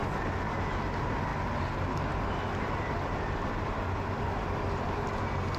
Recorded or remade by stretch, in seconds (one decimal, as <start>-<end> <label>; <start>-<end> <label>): 0.0-5.6 recorded